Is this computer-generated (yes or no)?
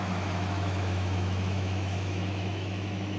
yes